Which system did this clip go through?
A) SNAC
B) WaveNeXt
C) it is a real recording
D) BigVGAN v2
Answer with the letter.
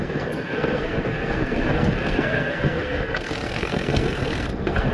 A